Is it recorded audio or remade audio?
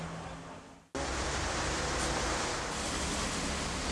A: recorded